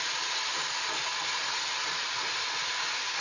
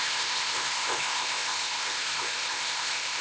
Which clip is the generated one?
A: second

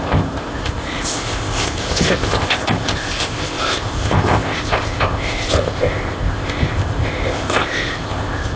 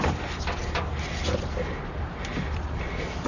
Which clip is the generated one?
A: first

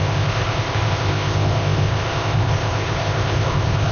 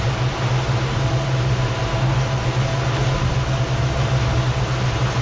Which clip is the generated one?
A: first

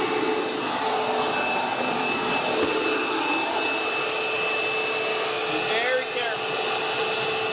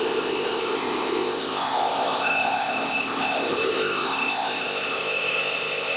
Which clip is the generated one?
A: second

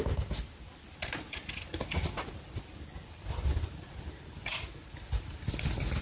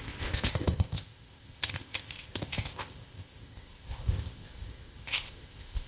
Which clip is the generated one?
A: second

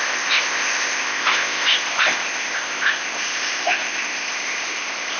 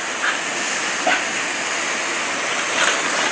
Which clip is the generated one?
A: first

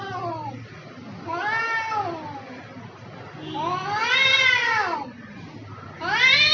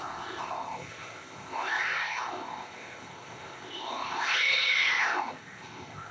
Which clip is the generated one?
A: second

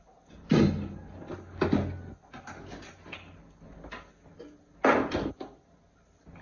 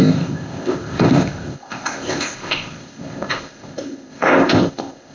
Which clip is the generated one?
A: second